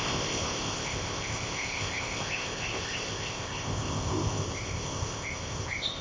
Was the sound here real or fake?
fake